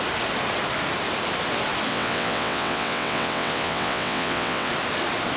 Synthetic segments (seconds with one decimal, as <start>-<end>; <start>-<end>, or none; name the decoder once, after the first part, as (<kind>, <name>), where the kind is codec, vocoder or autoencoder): 1.9-4.7 (vocoder, WaveNeXt)